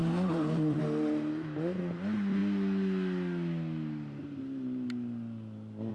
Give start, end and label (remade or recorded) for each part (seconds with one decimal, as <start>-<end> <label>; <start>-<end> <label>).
0.0-0.8 remade; 0.8-5.9 recorded